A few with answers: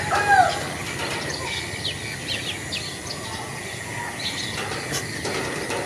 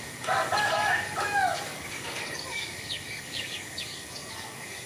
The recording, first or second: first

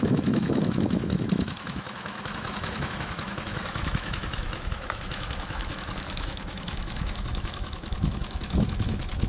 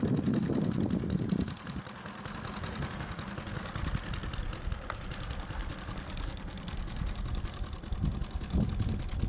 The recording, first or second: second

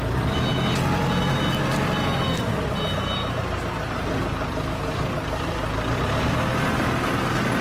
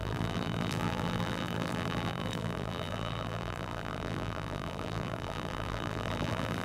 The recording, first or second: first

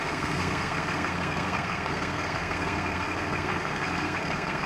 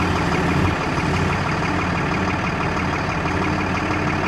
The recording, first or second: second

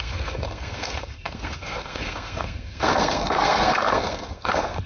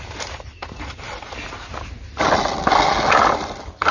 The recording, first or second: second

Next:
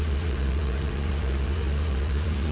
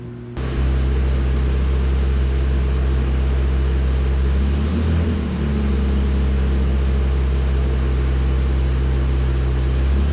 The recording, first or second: second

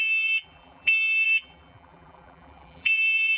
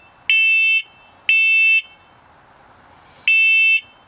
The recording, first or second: second